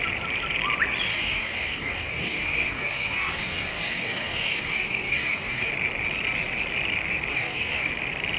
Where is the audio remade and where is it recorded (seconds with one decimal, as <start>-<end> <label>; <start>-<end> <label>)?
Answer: 0.0-1.1 recorded; 1.1-5.7 remade; 5.7-7.3 recorded; 7.3-7.9 remade; 7.9-8.4 recorded